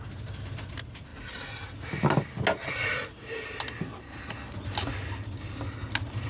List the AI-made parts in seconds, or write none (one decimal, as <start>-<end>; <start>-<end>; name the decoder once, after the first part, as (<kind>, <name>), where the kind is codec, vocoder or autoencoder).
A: none